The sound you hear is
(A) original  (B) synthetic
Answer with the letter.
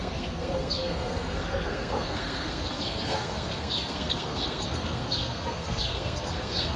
B